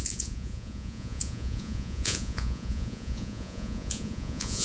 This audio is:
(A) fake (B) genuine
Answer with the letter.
A